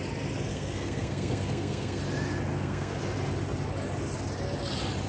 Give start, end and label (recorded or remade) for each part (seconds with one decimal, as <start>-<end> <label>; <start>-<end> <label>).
0.0-0.5 recorded; 0.5-2.0 remade; 2.0-2.5 recorded; 2.5-3.0 remade; 3.0-5.1 recorded